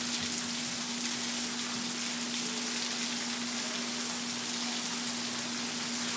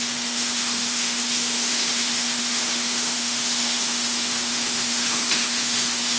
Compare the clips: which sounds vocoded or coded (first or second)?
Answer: second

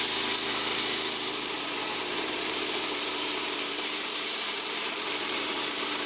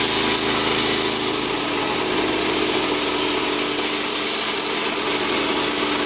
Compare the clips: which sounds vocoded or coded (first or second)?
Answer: first